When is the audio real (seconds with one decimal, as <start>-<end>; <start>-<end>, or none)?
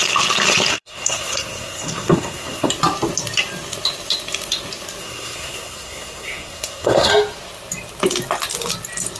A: 0.0-0.7; 2.7-5.0; 7.1-9.2